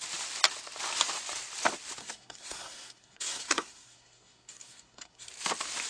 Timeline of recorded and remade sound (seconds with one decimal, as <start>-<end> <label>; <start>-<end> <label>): 0.0-2.0 recorded; 2.0-5.3 remade; 5.3-5.9 recorded